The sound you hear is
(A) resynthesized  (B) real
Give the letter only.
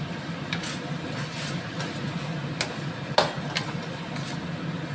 B